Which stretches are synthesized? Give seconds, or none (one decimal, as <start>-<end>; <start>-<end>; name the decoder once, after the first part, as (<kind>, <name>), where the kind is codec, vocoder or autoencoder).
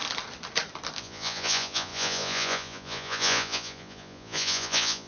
1.0-5.1 (vocoder, Vocos)